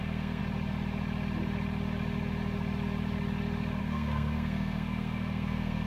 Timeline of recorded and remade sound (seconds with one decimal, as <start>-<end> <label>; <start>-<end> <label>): 0.0-0.4 remade; 0.4-3.8 recorded; 3.8-5.9 remade